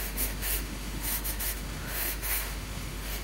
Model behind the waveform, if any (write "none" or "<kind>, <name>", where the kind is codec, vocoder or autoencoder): autoencoder, DAC-VAE